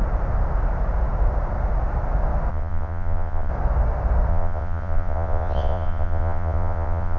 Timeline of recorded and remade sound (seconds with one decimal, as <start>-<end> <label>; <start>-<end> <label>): 0.0-2.5 recorded; 2.5-3.5 remade; 3.5-4.3 recorded; 4.3-7.2 remade

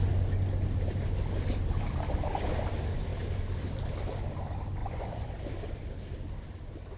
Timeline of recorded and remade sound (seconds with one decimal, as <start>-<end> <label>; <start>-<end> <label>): 0.0-4.8 recorded; 4.8-5.3 remade; 5.3-7.0 recorded

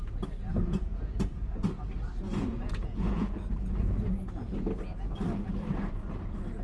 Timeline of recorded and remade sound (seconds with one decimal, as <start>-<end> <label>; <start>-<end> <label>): 0.0-0.4 recorded; 0.4-1.5 remade; 1.5-2.5 recorded; 2.5-4.5 remade; 4.5-6.6 recorded

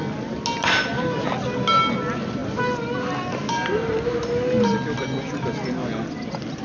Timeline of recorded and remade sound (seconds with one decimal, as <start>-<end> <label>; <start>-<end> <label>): 0.0-6.6 recorded

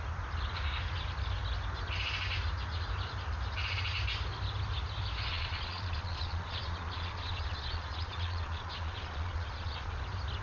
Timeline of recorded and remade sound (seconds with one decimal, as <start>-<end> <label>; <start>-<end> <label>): 0.0-5.3 recorded; 5.3-10.0 remade; 10.0-10.4 recorded